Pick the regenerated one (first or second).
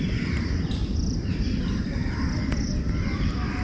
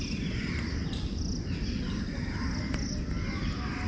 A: first